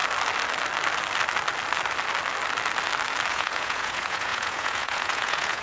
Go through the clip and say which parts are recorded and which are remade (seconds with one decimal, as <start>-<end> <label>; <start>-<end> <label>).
0.0-3.3 recorded; 3.3-5.6 remade